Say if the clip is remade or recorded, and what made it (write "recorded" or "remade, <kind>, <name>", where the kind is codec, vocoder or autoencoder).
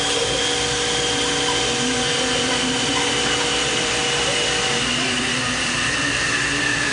remade, vocoder, BigVGAN v2